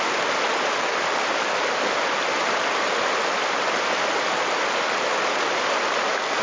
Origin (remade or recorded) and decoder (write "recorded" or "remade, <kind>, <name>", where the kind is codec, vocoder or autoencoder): recorded